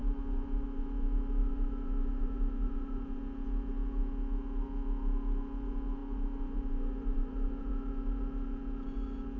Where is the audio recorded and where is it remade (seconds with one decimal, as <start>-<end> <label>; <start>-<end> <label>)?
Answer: 0.0-3.2 remade; 3.2-6.0 recorded; 6.0-7.7 remade; 7.7-9.4 recorded